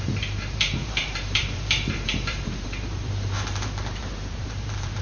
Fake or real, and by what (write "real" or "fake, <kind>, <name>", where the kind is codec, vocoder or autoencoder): fake, vocoder, BigVGAN v2